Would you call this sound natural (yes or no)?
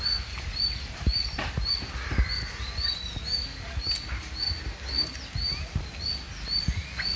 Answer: yes